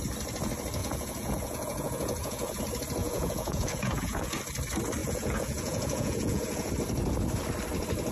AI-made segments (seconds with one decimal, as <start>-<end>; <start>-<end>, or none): 0.8-2.6; 3.0-4.4; 5.0-6.7